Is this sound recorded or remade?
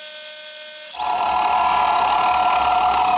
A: recorded